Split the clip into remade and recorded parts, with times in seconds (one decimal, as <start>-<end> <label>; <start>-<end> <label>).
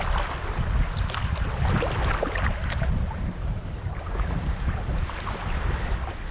0.0-2.6 recorded; 2.6-4.9 remade; 4.9-6.3 recorded